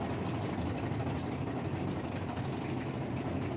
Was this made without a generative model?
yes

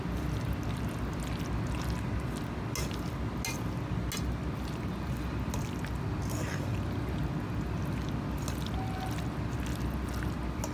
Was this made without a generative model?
yes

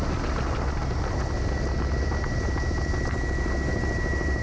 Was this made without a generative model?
yes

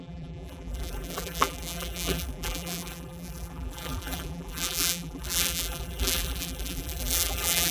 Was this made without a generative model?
no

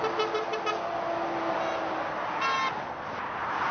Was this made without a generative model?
yes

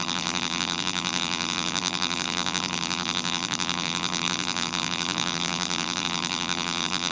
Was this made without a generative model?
no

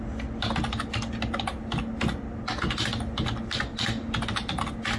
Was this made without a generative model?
yes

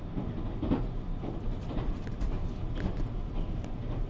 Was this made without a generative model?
yes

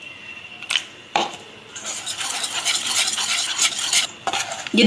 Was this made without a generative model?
no